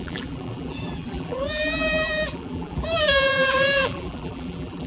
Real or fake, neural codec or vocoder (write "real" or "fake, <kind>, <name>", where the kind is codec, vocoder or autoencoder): fake, vocoder, BigVGAN v2